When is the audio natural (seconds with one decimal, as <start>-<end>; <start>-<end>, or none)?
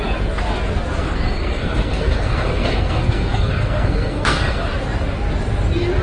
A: 0.0-1.0; 4.6-6.0